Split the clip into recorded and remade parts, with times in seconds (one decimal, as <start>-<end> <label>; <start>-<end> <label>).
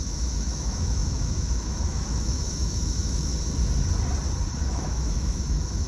0.0-3.3 remade; 3.3-4.7 recorded; 4.7-5.9 remade